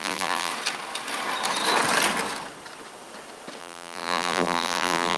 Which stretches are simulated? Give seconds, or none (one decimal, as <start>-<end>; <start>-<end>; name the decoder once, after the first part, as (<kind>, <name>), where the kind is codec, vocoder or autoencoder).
0.0-0.5 (vocoder, BigVGAN v2); 3.6-5.2